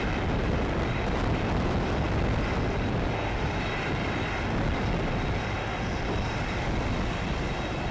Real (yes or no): yes